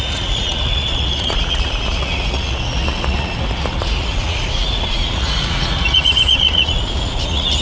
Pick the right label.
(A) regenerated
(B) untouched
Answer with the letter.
A